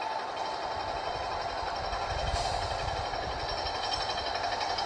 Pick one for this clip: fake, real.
real